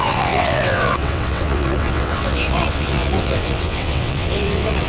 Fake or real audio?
fake